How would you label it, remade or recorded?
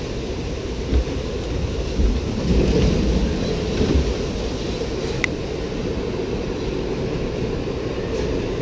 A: recorded